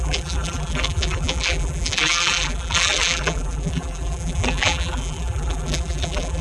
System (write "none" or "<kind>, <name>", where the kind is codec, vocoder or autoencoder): vocoder, BigVGAN v2